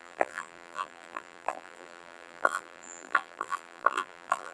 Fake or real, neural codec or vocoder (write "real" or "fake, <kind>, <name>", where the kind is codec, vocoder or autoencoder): fake, vocoder, BigVGAN v2